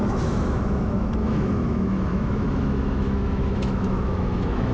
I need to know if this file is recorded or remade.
remade